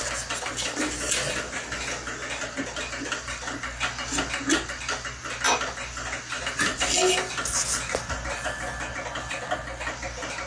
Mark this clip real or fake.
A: real